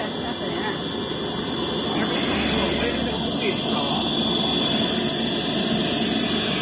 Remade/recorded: recorded